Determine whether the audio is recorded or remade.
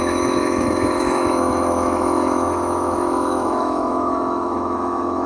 remade